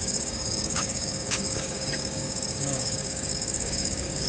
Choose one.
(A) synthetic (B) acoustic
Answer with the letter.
A